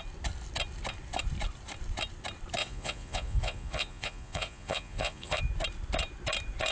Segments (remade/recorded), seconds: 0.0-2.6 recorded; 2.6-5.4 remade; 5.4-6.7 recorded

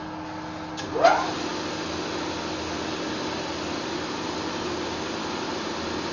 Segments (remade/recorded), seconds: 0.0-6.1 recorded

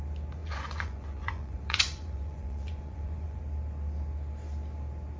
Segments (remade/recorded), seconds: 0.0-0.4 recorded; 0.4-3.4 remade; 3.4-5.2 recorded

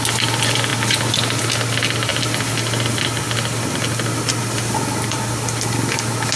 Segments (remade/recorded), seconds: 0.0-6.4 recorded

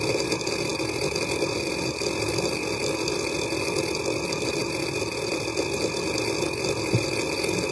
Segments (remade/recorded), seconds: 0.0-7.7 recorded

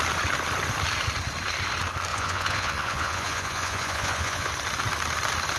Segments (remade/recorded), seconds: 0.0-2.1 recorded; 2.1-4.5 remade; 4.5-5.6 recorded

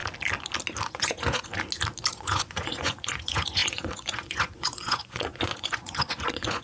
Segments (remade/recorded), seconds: 0.0-0.9 recorded; 0.9-1.5 remade; 1.5-2.1 recorded; 2.1-6.6 remade